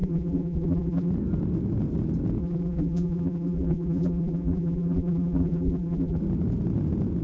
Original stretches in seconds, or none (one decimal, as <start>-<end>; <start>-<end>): 1.1-2.4; 6.2-7.2